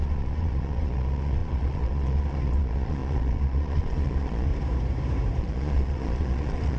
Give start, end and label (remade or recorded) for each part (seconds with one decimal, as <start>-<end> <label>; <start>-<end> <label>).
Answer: 0.0-4.5 remade; 4.5-5.4 recorded; 5.4-6.8 remade

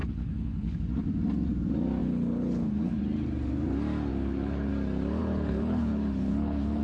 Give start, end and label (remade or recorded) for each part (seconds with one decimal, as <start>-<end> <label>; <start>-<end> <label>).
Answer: 0.0-0.8 remade; 0.8-2.0 recorded; 2.0-3.0 remade; 3.0-4.1 recorded; 4.1-4.7 remade; 4.7-5.2 recorded; 5.2-6.8 remade

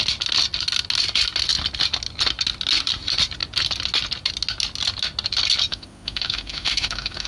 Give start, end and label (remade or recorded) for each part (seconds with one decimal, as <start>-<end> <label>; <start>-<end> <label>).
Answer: 0.0-5.7 recorded; 5.7-7.3 remade